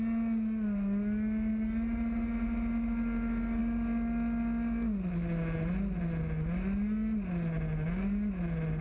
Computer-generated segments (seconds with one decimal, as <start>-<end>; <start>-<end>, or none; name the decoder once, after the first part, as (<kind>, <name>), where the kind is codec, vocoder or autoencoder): none